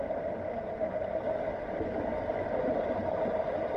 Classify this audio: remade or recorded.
recorded